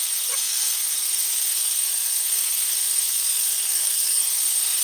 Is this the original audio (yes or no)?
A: no